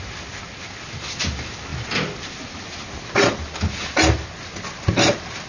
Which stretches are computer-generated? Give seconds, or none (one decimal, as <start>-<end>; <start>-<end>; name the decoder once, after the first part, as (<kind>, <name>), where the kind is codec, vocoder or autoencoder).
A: none